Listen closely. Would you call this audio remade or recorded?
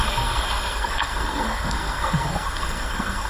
remade